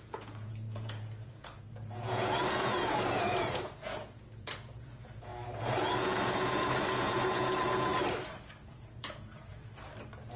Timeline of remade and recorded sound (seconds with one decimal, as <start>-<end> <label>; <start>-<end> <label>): 0.0-5.3 remade; 5.3-5.8 recorded; 5.8-7.9 remade; 7.9-8.7 recorded; 8.7-9.5 remade; 9.5-10.4 recorded